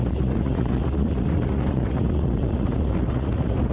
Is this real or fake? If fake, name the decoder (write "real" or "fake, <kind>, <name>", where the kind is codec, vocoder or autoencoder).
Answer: fake, vocoder, Vocos